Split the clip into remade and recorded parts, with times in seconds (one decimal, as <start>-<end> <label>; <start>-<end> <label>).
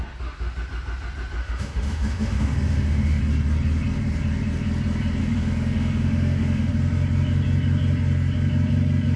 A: 0.0-1.4 recorded; 1.4-3.2 remade; 3.2-5.2 recorded; 5.2-6.7 remade; 6.7-9.2 recorded